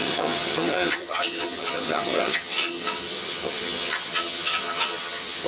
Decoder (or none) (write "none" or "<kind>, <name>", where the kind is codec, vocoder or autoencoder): vocoder, HiFi-GAN